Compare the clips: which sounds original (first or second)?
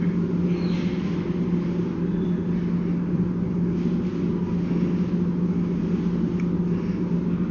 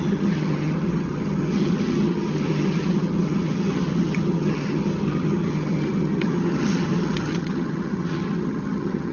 first